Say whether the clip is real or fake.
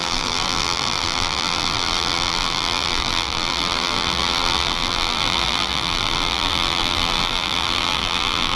fake